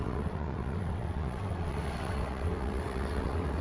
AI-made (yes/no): yes